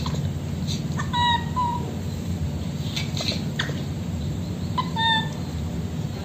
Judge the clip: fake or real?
real